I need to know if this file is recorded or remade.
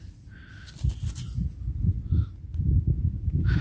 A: recorded